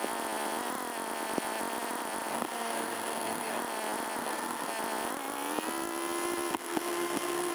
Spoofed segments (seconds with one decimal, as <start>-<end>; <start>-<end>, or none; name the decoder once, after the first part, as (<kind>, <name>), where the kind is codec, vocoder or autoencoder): 2.3-3.6 (codec, SNAC); 4.2-4.7; 6.5-7.5